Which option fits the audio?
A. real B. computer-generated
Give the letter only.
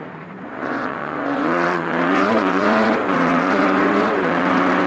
B